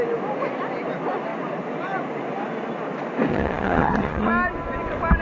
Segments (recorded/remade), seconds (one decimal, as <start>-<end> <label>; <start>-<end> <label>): 0.0-3.3 recorded; 3.3-4.3 remade; 4.3-5.2 recorded

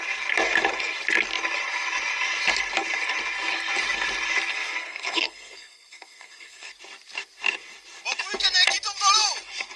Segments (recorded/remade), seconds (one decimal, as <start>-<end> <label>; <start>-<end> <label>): 0.0-4.5 recorded; 4.5-6.7 remade; 6.7-9.8 recorded

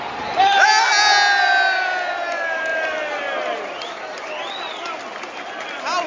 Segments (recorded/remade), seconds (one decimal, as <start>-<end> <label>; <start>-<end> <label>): 0.0-2.7 recorded; 2.7-4.3 remade; 4.3-6.1 recorded

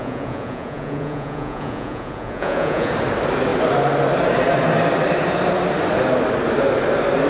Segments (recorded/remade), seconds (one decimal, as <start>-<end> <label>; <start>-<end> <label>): 0.0-2.9 remade; 2.9-7.3 recorded

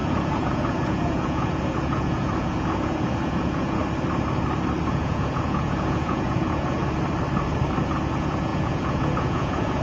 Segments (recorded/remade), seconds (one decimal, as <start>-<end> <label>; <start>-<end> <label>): 0.0-3.8 remade; 3.8-4.9 recorded; 4.9-6.8 remade; 6.8-8.1 recorded; 8.1-9.8 remade

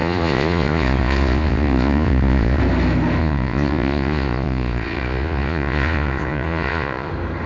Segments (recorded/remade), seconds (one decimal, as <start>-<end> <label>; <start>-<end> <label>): 0.0-2.6 remade; 2.6-3.2 recorded; 3.2-7.1 remade; 7.1-7.5 recorded

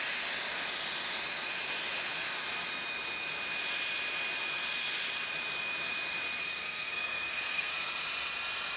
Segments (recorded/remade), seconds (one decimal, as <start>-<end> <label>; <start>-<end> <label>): 0.0-6.6 recorded; 6.6-7.7 remade; 7.7-8.8 recorded

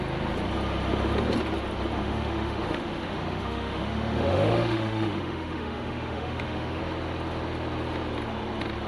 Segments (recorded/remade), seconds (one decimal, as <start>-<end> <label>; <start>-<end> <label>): 0.0-2.0 recorded; 2.0-6.8 remade; 6.8-8.9 recorded